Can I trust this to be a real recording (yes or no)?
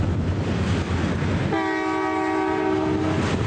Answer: yes